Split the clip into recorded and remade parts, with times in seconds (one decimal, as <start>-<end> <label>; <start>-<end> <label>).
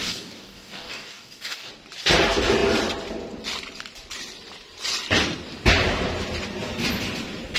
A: 0.0-1.7 remade; 1.7-7.6 recorded